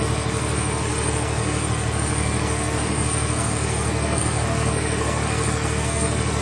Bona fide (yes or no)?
no